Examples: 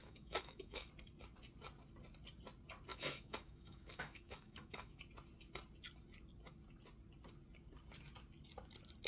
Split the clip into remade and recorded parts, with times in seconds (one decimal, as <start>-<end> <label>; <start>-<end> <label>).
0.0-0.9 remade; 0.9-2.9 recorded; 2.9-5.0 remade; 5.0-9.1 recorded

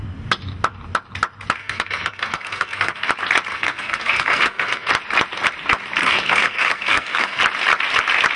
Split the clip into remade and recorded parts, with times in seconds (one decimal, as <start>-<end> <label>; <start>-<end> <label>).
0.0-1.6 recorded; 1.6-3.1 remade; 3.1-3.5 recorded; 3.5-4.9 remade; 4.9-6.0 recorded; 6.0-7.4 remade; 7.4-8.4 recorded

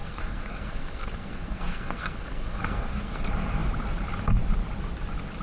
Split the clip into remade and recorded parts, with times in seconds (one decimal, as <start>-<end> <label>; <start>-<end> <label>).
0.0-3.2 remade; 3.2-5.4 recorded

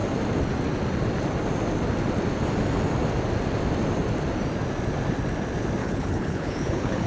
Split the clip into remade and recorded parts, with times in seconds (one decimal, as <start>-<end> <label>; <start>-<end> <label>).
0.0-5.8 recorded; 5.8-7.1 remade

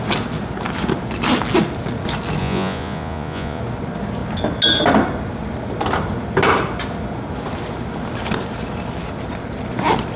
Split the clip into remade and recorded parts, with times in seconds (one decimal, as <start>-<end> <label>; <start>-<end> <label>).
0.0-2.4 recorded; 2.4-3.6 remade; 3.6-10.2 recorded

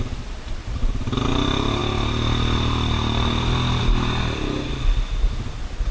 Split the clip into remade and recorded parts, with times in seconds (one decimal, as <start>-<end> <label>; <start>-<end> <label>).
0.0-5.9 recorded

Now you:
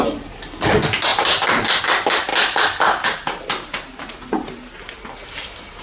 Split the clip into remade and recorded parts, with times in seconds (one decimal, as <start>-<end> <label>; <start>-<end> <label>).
0.0-1.1 recorded; 1.1-1.8 remade; 1.8-2.3 recorded; 2.3-5.0 remade; 5.0-5.8 recorded